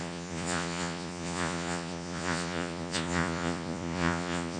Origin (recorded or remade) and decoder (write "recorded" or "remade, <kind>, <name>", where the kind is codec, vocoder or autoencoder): remade, vocoder, Vocos